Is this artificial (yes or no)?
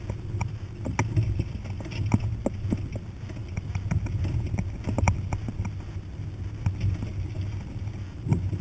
no